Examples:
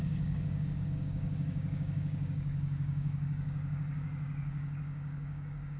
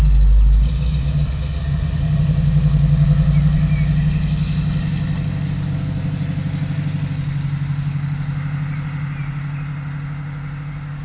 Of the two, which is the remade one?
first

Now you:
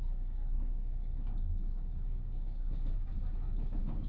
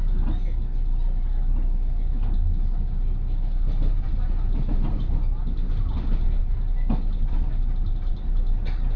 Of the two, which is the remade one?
first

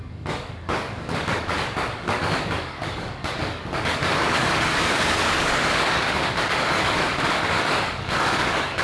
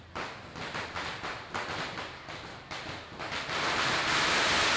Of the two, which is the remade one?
first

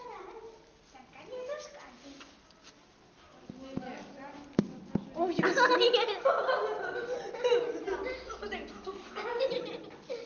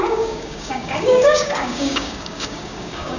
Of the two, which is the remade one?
second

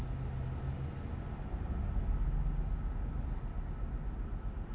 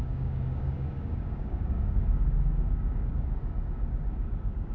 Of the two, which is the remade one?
second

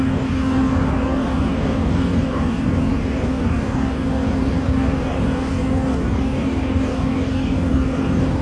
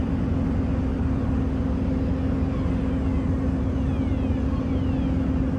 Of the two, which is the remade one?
first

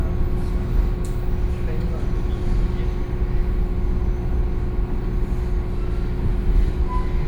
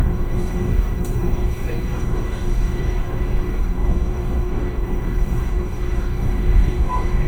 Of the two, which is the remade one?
second